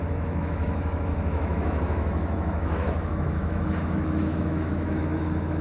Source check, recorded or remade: remade